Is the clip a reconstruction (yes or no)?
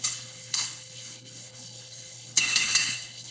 yes